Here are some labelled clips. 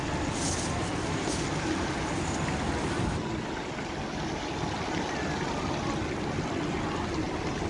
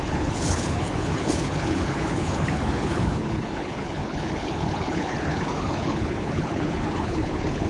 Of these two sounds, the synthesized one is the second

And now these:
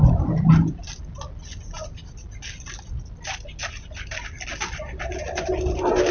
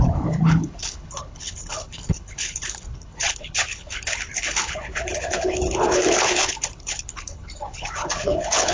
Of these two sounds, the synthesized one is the second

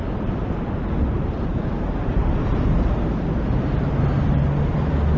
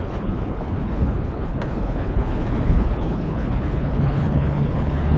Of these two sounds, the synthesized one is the second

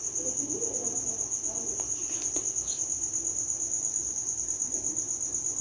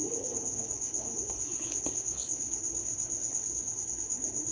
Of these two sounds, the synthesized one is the second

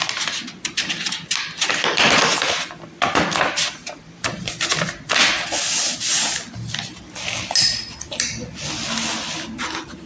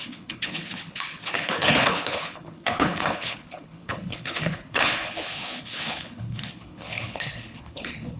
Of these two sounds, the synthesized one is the second